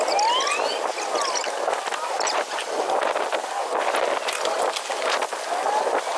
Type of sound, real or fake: real